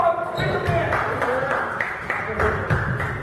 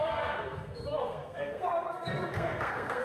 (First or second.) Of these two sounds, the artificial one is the second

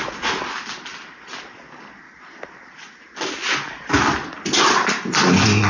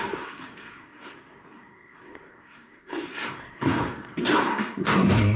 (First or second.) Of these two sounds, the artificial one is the second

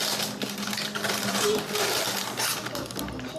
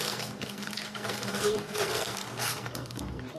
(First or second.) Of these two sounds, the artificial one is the second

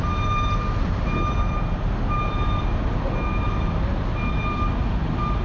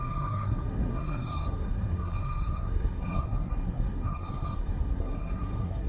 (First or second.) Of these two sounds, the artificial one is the second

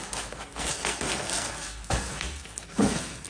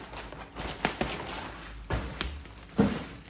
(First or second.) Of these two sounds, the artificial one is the first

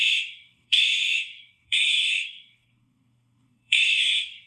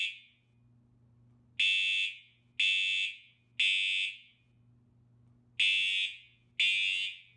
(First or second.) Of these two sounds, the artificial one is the first